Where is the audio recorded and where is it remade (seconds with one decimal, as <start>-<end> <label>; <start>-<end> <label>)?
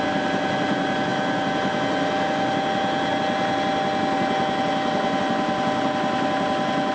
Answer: 0.0-6.9 recorded